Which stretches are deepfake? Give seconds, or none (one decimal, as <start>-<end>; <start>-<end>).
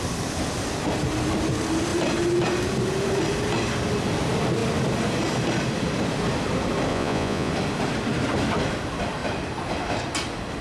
6.9-7.5